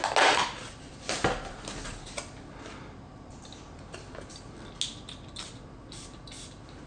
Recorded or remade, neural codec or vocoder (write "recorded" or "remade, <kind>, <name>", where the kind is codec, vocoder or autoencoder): recorded